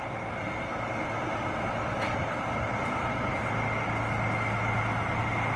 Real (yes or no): yes